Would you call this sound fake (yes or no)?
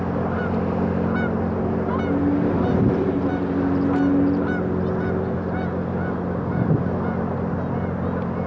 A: no